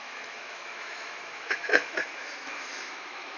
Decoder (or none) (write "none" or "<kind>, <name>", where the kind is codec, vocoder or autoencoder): autoencoder, DAC-VAE